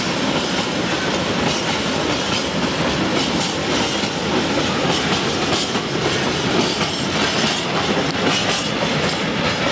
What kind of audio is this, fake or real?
real